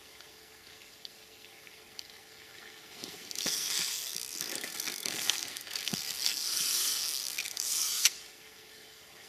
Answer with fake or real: fake